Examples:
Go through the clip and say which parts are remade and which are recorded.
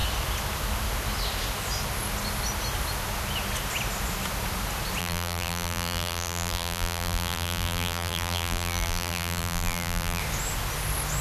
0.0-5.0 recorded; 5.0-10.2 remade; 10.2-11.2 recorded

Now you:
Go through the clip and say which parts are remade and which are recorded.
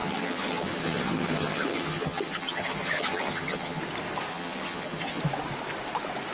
0.0-3.8 remade; 3.8-4.3 recorded; 4.3-5.2 remade; 5.2-6.3 recorded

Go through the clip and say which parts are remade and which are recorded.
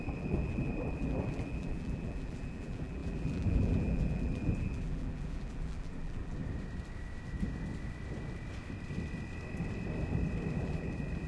0.0-6.4 remade; 6.4-10.5 recorded; 10.5-11.3 remade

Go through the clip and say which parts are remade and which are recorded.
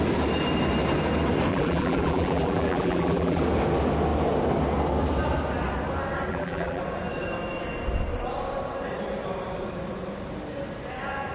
0.0-1.5 recorded; 1.5-3.4 remade; 3.4-6.3 recorded; 6.3-6.8 remade; 6.8-11.3 recorded